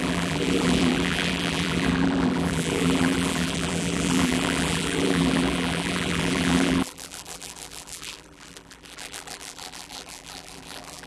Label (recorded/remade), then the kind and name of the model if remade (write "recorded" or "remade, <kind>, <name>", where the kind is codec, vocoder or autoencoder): remade, vocoder, BigVGAN v2